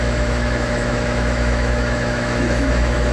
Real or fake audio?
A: fake